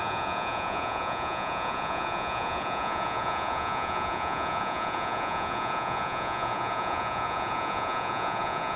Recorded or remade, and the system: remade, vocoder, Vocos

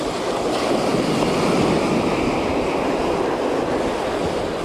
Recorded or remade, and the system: recorded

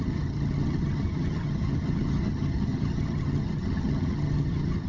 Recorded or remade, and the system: remade, vocoder, HiFi-GAN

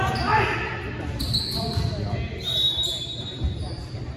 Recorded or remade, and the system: recorded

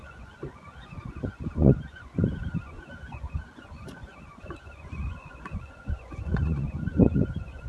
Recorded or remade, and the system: remade, vocoder, Vocos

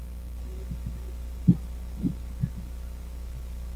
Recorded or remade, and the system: recorded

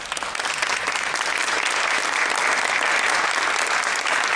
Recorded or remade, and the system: recorded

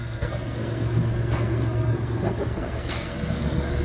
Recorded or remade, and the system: remade, codec, SNAC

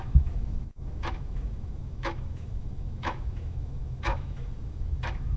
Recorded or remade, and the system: remade, autoencoder, DAC-VAE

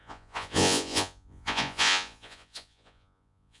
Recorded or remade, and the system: remade, vocoder, Vocos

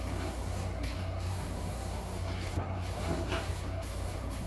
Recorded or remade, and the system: remade, codec, SNAC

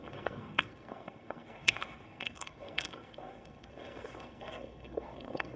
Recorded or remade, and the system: remade, codec, SNAC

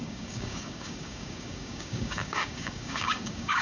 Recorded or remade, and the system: remade, codec, DAC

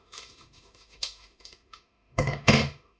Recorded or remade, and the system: remade, autoencoder, DAC-VAE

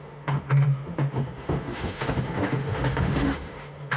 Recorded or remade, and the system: remade, autoencoder, DAC-VAE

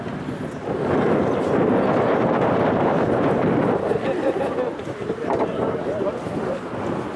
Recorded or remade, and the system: recorded